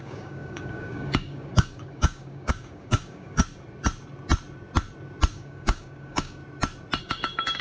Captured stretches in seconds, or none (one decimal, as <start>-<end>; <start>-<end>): 3.4-5.3; 6.4-7.0